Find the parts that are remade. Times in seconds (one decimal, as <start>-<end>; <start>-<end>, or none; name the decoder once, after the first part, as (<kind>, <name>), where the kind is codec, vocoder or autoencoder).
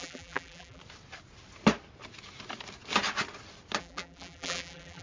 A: 0.0-0.8 (vocoder, BigVGAN v2); 3.8-5.0